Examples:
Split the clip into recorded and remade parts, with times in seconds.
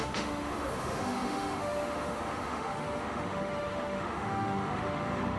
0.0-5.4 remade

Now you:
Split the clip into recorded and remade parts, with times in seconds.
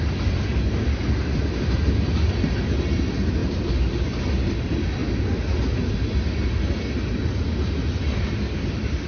0.0-9.1 recorded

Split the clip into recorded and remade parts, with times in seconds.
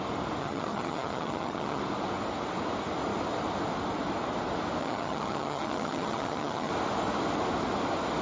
0.0-0.4 recorded; 0.4-1.8 remade; 1.8-4.8 recorded; 4.8-6.7 remade; 6.7-8.2 recorded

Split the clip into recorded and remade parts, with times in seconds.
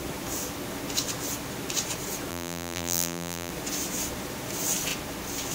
0.0-2.3 recorded; 2.3-3.5 remade; 3.5-5.5 recorded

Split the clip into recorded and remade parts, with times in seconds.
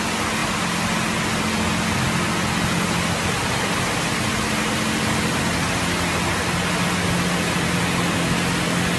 0.0-9.0 recorded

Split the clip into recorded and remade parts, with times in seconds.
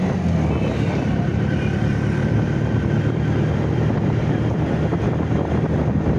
0.0-1.3 recorded; 1.3-5.0 remade; 5.0-6.2 recorded